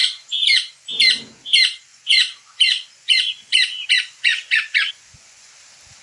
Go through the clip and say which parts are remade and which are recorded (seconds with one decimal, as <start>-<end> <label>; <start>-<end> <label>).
0.0-0.8 remade; 0.8-1.9 recorded; 1.9-5.5 remade; 5.5-6.0 recorded